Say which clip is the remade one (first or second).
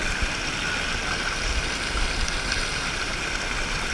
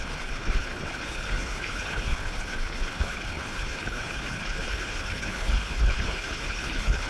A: second